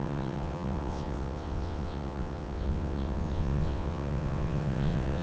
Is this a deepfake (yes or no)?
yes